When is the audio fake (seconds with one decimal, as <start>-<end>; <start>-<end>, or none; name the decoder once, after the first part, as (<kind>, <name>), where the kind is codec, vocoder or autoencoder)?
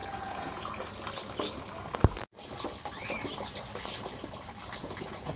0.0-0.7 (vocoder, Vocos); 4.8-5.4